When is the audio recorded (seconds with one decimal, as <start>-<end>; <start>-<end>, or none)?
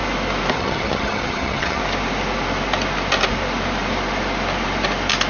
0.0-0.5; 1.8-5.3